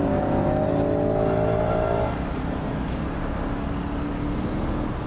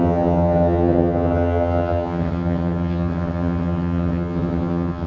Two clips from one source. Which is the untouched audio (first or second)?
first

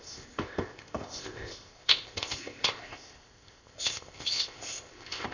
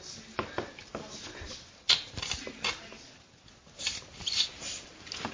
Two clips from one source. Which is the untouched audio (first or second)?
second